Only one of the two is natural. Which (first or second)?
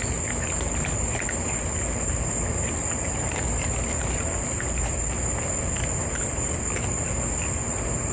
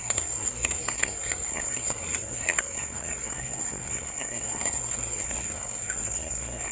first